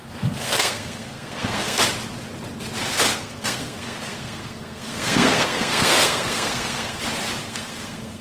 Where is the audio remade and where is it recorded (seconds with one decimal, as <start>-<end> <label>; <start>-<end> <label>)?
0.0-1.8 remade; 1.8-3.1 recorded; 3.1-7.0 remade; 7.0-7.4 recorded; 7.4-8.2 remade